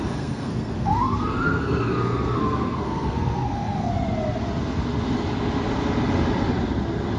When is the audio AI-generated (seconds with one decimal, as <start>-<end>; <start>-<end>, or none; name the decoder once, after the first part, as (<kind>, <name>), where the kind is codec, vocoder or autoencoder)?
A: 0.0-3.9 (codec, SNAC)